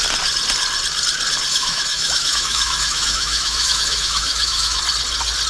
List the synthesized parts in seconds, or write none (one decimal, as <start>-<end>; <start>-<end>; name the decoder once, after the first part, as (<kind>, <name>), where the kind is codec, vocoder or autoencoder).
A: 1.5-4.8 (autoencoder, DAC-VAE)